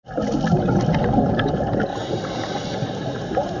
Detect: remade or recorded recorded